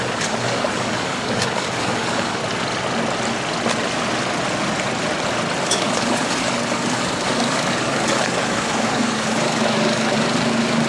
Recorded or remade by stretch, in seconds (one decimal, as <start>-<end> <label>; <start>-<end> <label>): 0.0-2.4 remade; 2.4-5.6 recorded; 5.6-10.9 remade